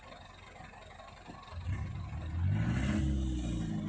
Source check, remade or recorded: recorded